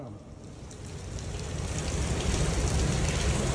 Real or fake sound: fake